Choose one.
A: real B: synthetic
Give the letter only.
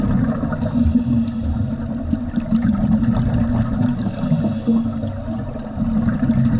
A